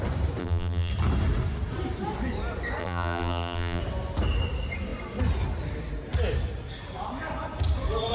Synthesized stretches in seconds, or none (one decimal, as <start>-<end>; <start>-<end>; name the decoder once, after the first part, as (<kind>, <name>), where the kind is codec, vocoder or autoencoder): 0.4-0.9 (vocoder, BigVGAN v2); 2.8-3.8